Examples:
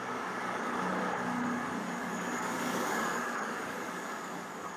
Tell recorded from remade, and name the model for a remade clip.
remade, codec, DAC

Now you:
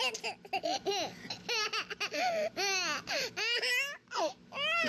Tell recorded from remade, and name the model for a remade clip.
recorded